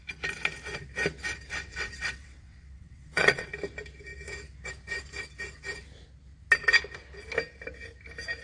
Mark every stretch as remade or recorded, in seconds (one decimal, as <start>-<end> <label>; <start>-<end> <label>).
0.0-1.5 recorded; 1.5-3.5 remade; 3.5-8.4 recorded